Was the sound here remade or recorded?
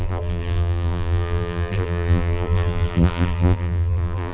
remade